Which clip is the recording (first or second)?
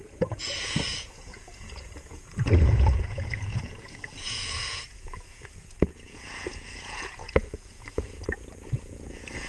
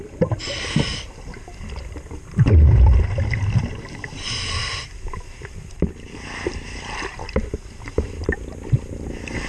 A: second